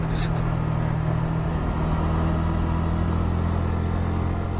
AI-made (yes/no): no